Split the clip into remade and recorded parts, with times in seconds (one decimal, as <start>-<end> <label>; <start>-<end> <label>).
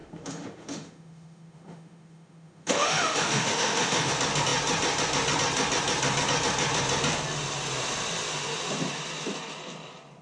0.0-4.1 remade; 4.1-10.2 recorded